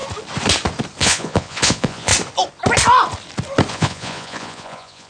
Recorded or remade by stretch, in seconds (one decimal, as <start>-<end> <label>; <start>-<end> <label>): 0.0-1.0 recorded; 1.0-2.1 remade; 2.1-3.7 recorded; 3.7-5.1 remade

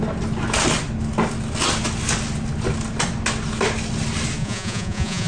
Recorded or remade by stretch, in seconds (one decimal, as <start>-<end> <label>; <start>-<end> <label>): 0.0-4.4 recorded; 4.4-5.3 remade

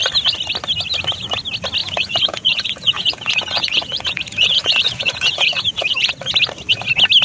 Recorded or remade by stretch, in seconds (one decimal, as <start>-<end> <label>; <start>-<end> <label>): 0.0-1.8 recorded; 1.8-6.1 remade; 6.1-7.2 recorded

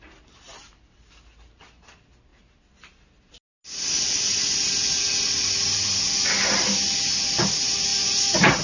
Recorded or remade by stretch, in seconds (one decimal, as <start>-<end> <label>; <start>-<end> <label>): 0.0-8.6 recorded

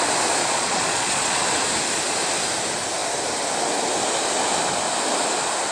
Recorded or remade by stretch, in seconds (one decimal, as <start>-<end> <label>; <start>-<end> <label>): 0.0-0.4 recorded; 0.4-1.4 remade; 1.4-5.7 recorded

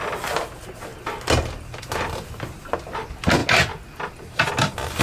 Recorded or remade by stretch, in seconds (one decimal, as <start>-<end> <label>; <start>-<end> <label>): 0.0-5.0 recorded